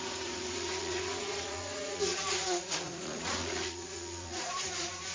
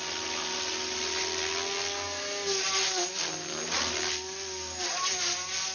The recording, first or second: second